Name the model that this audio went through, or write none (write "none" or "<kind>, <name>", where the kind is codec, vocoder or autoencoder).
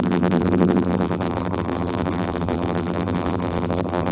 vocoder, BigVGAN v2